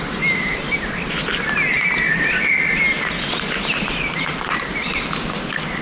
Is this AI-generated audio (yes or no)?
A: no